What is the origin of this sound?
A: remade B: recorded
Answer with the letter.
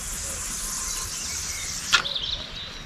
B